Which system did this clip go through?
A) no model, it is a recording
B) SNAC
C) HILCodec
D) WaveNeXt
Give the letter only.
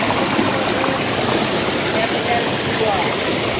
A